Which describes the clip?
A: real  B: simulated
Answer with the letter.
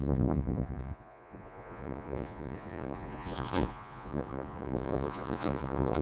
B